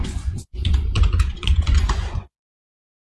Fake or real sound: fake